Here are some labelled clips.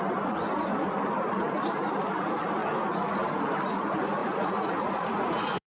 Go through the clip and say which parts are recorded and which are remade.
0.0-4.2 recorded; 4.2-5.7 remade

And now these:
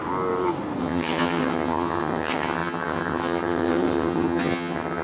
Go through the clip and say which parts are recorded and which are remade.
0.0-0.8 recorded; 0.8-5.0 remade

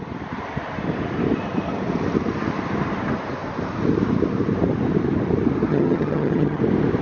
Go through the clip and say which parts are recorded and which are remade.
0.0-5.7 recorded; 5.7-6.6 remade; 6.6-7.0 recorded

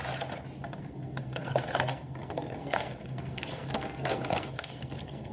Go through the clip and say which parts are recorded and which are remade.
0.0-0.8 recorded; 0.8-5.3 remade

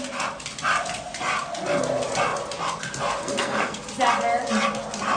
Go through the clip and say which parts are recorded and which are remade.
0.0-3.2 recorded; 3.2-3.8 remade; 3.8-5.2 recorded

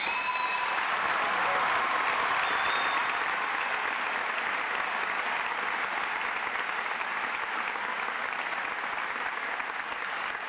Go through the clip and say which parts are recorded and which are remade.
0.0-10.5 recorded

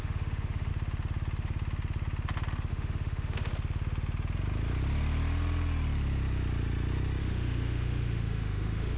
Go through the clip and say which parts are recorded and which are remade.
0.0-0.7 remade; 0.7-2.7 recorded; 2.7-3.5 remade; 3.5-7.2 recorded; 7.2-9.0 remade